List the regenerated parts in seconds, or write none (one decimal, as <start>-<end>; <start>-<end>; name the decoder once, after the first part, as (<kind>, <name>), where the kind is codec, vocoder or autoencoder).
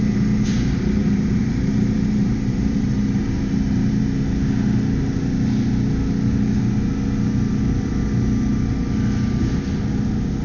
1.0-4.0 (vocoder, BigVGAN v2)